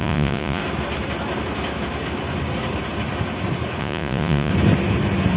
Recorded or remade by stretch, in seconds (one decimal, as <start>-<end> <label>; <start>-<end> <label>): 0.0-0.6 remade; 0.6-3.8 recorded; 3.8-4.5 remade; 4.5-5.4 recorded